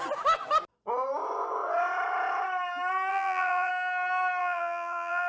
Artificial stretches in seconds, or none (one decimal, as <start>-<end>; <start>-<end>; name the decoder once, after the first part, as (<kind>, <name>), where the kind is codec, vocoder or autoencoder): 3.1-3.7 (vocoder, BigVGAN v2); 4.4-5.3